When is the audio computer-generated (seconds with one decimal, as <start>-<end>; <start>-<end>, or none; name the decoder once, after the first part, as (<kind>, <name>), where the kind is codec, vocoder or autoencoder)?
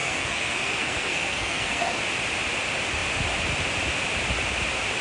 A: 0.0-2.0 (codec, SNAC)